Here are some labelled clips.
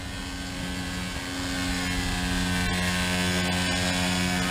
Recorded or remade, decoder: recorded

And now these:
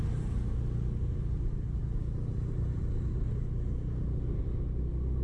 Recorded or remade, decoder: recorded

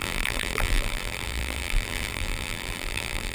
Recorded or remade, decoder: remade, vocoder, BigVGAN v2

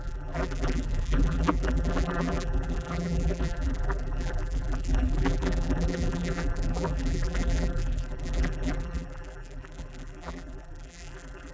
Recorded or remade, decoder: remade, vocoder, BigVGAN v2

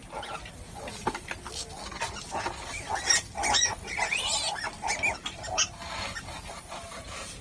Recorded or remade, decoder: recorded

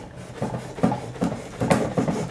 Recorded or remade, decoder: recorded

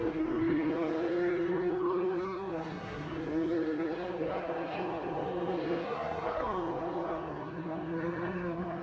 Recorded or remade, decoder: remade, codec, SNAC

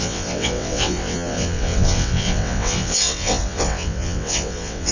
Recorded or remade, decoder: remade, vocoder, WaveNeXt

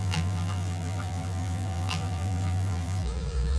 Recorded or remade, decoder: remade, vocoder, BigVGAN v2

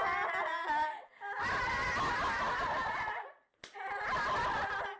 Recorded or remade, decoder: recorded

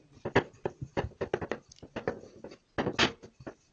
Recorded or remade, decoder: recorded